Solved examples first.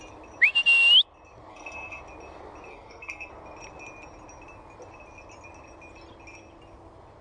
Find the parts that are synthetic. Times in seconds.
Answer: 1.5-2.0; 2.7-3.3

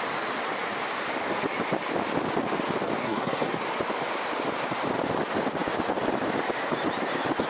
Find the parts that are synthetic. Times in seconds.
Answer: 3.0-3.6